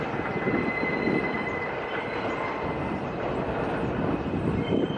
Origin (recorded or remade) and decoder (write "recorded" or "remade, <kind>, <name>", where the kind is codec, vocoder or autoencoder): recorded